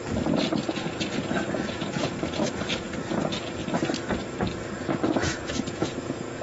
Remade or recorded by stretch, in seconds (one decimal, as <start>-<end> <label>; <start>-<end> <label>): 0.0-0.6 recorded; 0.6-2.4 remade; 2.4-5.2 recorded; 5.2-6.4 remade